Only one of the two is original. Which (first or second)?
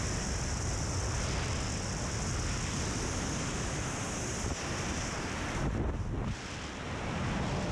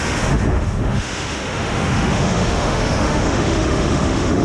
first